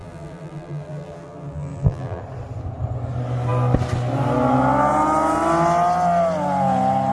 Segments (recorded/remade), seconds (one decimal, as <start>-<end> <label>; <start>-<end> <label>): 0.0-2.2 remade; 2.2-7.1 recorded